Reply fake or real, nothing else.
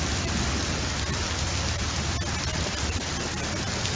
real